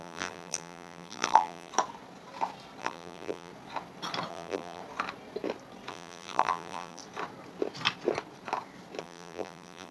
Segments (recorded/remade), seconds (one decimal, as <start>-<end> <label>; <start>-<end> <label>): 0.0-1.7 remade; 1.7-2.8 recorded; 2.8-3.5 remade; 3.5-4.3 recorded; 4.3-4.8 remade; 4.8-5.9 recorded; 5.9-7.0 remade; 7.0-9.0 recorded; 9.0-9.9 remade